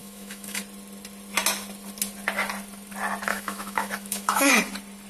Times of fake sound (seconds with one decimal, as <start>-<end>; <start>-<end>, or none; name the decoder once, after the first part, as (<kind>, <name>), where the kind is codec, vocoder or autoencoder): 0.0-0.6 (autoencoder, DAC-VAE); 3.3-4.5